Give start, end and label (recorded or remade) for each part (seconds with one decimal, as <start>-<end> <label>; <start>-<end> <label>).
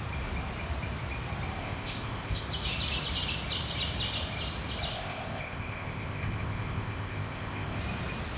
0.0-1.6 recorded; 1.6-2.4 remade; 2.4-4.9 recorded; 4.9-7.8 remade; 7.8-8.4 recorded